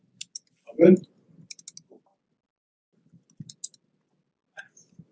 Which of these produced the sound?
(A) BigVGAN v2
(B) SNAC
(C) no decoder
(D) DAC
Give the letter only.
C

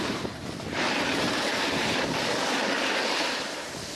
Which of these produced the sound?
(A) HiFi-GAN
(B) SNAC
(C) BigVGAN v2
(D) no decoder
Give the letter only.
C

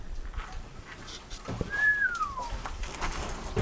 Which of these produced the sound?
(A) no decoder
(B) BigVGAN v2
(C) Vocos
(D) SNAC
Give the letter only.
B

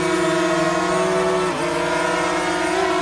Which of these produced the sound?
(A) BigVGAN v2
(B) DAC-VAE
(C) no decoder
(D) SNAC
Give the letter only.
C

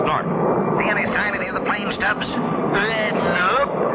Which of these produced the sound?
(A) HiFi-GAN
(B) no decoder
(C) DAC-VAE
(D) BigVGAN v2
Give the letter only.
B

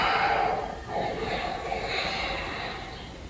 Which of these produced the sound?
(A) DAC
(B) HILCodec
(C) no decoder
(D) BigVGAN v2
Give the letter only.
C